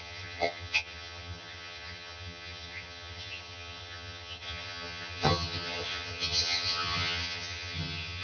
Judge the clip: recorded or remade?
remade